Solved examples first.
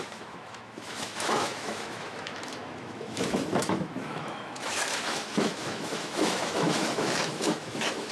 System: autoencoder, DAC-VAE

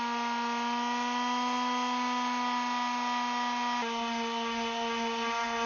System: none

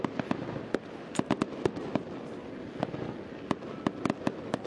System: none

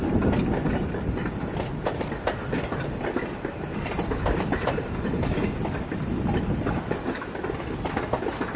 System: none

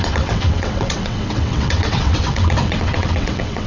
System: vocoder, WaveNeXt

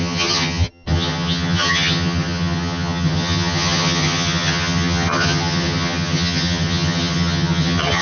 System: vocoder, HiFi-GAN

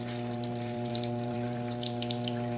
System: vocoder, BigVGAN v2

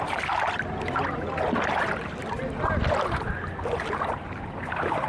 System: none